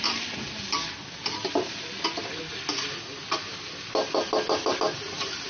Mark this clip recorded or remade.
recorded